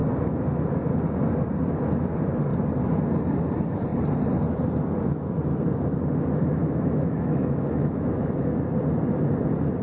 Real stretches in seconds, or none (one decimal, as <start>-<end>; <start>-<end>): 0.0-6.6; 8.5-9.8